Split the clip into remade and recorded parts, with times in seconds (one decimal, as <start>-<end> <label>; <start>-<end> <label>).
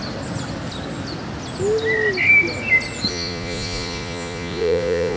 0.0-3.1 recorded; 3.1-5.2 remade